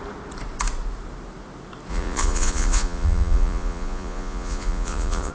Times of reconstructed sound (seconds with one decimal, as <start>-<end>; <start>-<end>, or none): 1.9-5.3